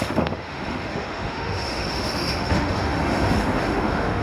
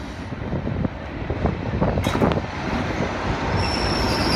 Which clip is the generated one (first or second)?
first